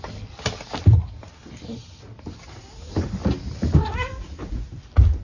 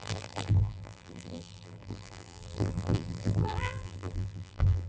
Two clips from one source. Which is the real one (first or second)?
first